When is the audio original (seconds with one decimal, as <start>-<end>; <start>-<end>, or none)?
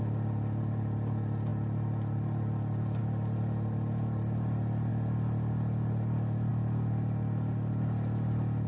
0.0-8.7